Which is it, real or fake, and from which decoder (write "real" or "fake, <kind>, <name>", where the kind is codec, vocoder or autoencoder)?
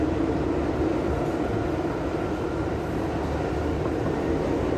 real